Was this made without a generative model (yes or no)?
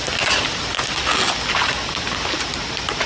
yes